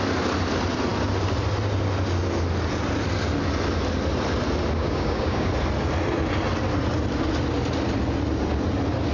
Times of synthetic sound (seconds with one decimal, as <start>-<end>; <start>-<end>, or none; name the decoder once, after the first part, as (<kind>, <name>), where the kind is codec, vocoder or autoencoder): 4.8-5.5 (codec, DAC)